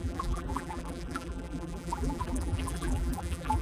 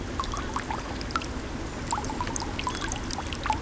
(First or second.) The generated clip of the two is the first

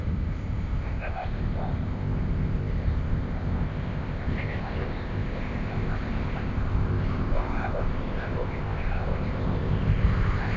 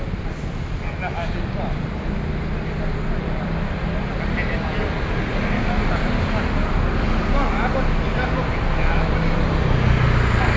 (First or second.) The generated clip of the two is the first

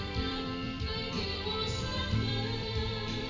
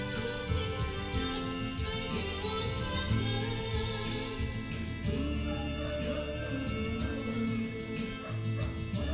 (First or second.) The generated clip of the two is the first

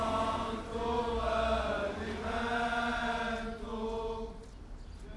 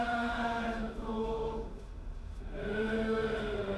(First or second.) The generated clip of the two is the second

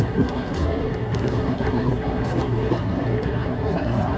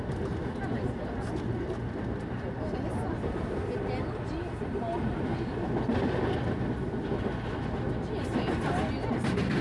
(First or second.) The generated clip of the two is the first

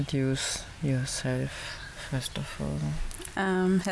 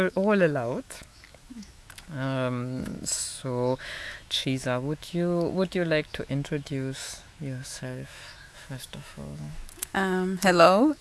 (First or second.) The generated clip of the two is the second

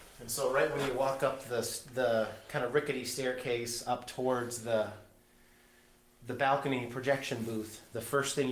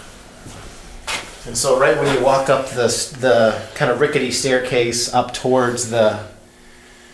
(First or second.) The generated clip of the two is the second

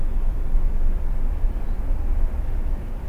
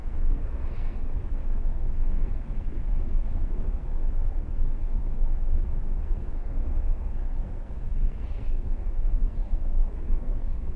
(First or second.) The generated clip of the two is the second